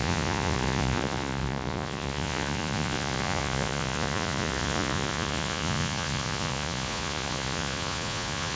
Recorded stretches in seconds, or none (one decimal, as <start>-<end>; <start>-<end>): none